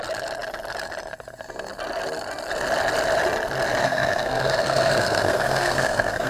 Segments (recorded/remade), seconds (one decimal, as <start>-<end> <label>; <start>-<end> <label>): 0.0-3.8 recorded; 3.8-6.3 remade